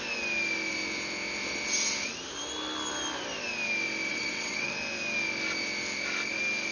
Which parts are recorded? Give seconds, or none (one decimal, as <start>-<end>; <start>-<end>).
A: 0.0-4.1; 4.7-6.7